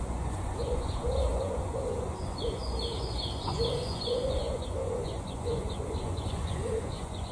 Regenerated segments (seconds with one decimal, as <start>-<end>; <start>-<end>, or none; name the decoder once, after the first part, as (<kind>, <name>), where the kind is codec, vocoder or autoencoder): 0.0-7.3 (vocoder, Vocos)